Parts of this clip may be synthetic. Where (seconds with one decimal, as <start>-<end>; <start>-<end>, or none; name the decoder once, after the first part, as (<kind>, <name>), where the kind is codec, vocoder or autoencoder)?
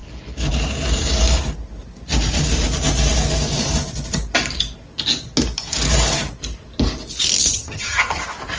7.5-8.2 (vocoder, HiFi-GAN)